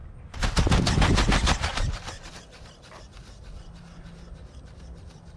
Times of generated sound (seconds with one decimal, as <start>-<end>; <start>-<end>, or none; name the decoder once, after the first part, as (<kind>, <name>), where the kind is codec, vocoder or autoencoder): none